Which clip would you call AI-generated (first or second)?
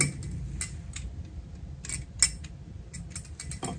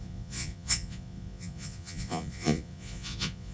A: second